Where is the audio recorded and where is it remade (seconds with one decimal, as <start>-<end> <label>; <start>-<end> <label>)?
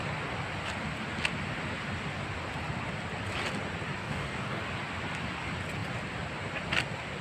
0.0-4.0 recorded; 4.0-4.6 remade; 4.6-7.2 recorded